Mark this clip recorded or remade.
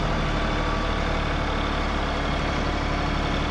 recorded